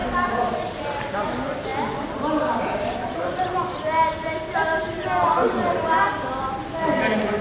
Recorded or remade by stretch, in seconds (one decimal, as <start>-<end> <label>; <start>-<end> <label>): 0.0-7.4 recorded